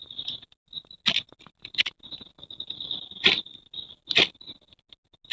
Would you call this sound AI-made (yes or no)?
no